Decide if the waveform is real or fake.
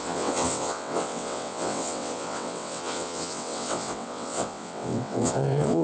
fake